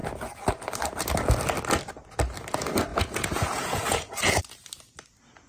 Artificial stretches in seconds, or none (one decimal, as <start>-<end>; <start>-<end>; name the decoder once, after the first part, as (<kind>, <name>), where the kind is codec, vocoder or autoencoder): 2.9-4.4 (vocoder, Vocos)